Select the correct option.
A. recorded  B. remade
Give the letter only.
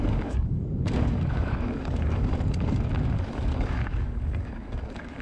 B